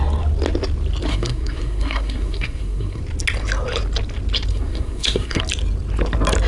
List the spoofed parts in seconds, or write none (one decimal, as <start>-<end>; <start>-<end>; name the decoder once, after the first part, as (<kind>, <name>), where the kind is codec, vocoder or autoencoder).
1.1-3.0 (codec, SNAC); 4.5-5.4

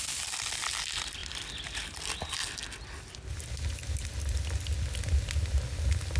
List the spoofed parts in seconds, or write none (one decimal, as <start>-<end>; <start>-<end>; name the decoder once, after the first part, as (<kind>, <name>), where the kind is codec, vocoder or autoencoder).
none